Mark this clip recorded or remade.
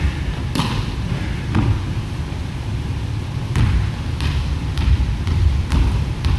remade